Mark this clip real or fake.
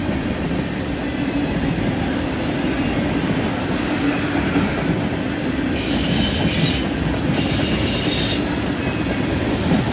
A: real